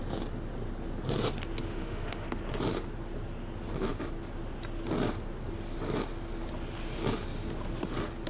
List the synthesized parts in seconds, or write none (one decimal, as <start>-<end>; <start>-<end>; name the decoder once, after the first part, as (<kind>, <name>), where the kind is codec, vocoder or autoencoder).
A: 1.6-2.4 (autoencoder, DAC-VAE)